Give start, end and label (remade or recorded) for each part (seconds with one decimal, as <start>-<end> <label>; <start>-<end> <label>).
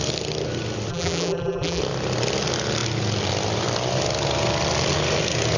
0.0-0.9 recorded; 0.9-1.8 remade; 1.8-5.6 recorded